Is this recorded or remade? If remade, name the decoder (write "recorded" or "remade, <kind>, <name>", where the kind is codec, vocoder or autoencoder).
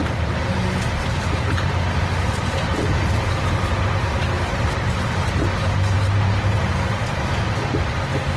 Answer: recorded